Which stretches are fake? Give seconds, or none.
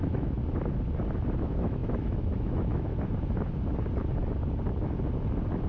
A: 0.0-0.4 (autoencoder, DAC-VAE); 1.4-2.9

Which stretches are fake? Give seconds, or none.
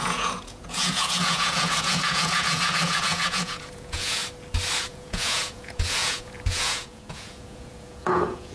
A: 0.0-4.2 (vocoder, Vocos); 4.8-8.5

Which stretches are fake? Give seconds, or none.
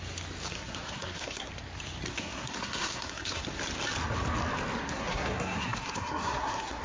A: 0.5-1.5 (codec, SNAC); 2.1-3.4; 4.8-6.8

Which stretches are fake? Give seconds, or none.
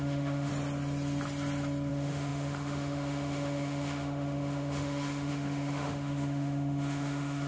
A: 0.0-0.5 (autoencoder, DAC-VAE); 1.9-7.5